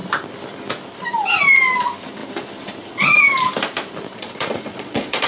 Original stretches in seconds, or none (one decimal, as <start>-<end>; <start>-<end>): 0.0-4.1